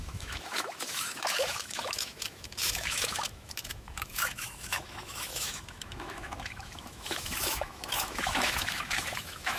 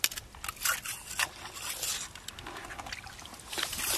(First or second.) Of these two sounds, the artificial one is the first